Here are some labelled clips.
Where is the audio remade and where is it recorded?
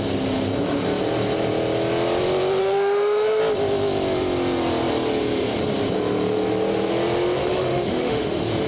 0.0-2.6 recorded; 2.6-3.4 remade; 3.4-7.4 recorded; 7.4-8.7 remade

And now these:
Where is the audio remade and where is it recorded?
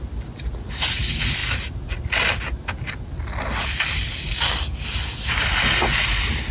0.0-6.5 recorded